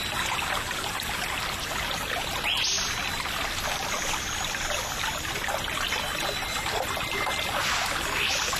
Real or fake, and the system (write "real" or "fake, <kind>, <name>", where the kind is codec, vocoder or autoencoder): real